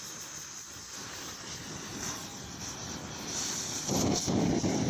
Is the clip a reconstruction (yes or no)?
no